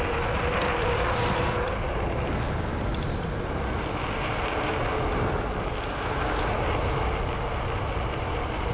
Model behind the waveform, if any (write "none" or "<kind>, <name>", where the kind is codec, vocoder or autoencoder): none